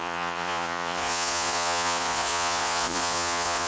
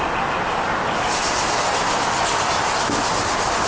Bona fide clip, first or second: second